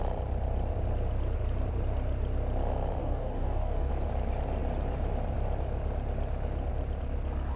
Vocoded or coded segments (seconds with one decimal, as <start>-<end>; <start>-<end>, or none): 3.0-3.9